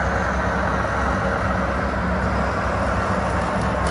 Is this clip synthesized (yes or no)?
no